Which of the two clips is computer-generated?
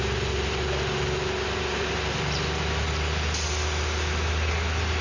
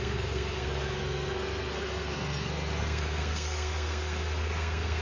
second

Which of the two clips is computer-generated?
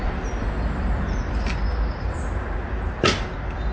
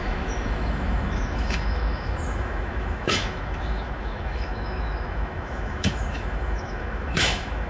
second